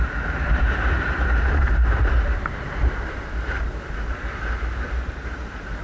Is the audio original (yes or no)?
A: no